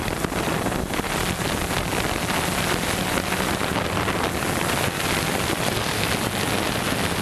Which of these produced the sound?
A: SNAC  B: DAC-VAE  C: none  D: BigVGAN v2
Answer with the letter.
C